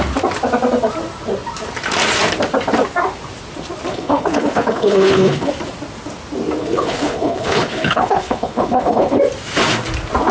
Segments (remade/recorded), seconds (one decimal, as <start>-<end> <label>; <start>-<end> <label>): 0.0-3.9 recorded; 3.9-5.5 remade; 5.5-6.6 recorded; 6.6-9.2 remade; 9.2-10.3 recorded